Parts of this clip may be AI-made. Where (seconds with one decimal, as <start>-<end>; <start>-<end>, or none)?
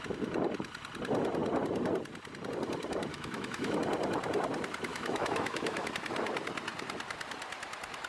3.1-3.8; 4.9-5.9